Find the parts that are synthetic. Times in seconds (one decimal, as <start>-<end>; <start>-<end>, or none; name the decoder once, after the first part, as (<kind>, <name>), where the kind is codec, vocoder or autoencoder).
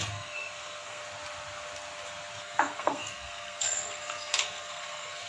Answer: 0.0-1.0 (codec, SNAC); 2.4-5.3